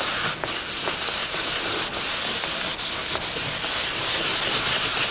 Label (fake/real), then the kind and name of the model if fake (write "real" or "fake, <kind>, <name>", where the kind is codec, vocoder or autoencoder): real